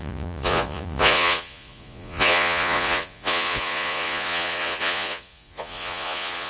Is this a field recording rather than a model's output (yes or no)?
no